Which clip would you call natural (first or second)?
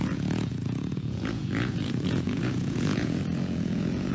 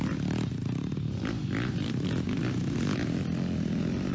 second